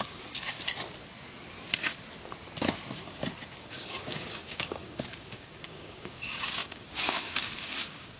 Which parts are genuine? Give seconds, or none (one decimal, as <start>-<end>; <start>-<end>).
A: 0.7-3.5

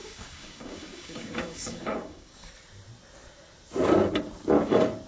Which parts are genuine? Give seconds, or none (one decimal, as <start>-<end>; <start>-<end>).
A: 2.5-5.1

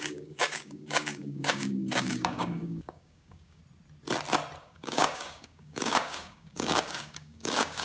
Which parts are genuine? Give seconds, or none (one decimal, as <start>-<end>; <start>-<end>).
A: 3.6-4.6

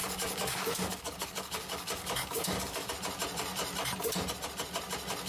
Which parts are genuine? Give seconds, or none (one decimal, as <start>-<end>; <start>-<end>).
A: 2.9-5.3